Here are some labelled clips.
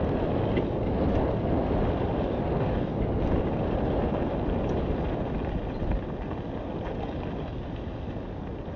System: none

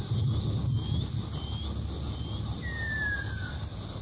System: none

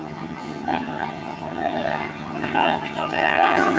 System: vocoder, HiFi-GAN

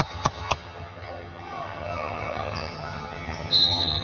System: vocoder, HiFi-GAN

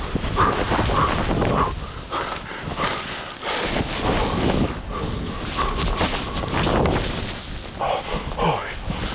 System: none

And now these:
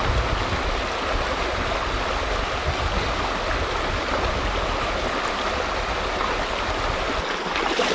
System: none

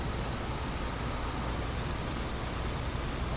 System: none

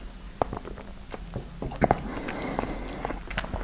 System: none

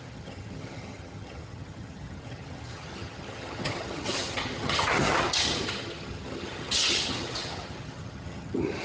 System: vocoder, HiFi-GAN